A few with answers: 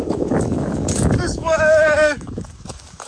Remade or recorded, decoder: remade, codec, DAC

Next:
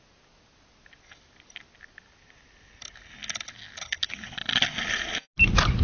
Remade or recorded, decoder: recorded